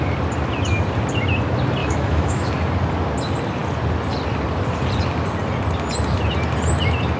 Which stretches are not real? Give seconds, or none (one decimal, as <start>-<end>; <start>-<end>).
1.8-2.5